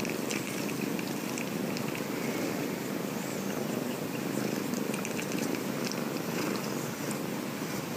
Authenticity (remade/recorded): recorded